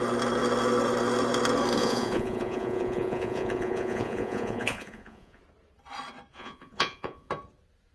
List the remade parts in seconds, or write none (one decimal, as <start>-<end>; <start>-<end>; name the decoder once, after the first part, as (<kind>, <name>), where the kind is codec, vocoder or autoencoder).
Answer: 1.8-5.4 (vocoder, Vocos); 6.3-7.3